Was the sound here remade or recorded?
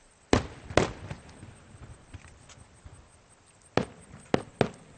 recorded